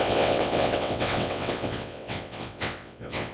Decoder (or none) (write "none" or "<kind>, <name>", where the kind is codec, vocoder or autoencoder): vocoder, WaveNeXt